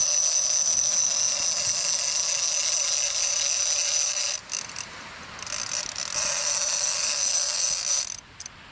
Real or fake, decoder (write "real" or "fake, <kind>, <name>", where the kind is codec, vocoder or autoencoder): real